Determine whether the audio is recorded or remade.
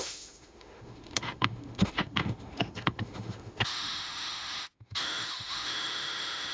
remade